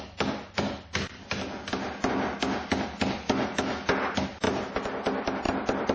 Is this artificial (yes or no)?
no